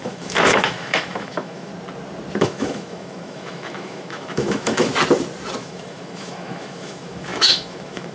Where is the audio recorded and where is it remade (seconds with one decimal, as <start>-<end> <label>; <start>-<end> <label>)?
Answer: 0.0-1.7 remade; 1.7-2.4 recorded; 2.4-4.9 remade; 4.9-5.6 recorded; 5.6-8.1 remade